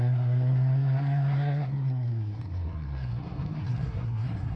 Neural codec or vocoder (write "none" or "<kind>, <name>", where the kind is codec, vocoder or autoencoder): codec, SNAC